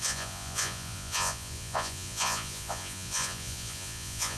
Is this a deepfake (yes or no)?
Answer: yes